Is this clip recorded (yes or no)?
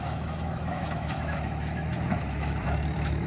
no